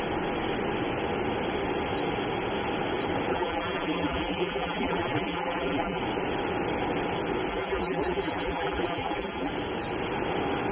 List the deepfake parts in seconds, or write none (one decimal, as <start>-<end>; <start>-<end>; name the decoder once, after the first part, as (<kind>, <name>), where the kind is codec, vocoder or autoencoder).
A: 3.3-6.0 (vocoder, BigVGAN v2); 7.5-9.5